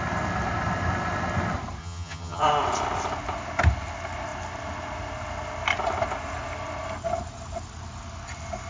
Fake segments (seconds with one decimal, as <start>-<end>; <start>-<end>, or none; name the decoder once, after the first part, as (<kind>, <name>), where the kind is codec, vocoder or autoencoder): 1.8-2.4 (vocoder, HiFi-GAN)